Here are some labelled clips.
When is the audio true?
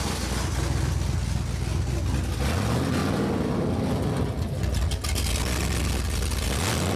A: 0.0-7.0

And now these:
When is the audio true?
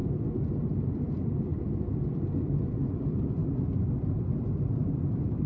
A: 0.0-0.6